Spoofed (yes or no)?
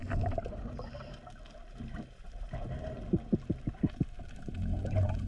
yes